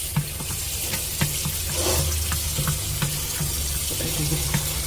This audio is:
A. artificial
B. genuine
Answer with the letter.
B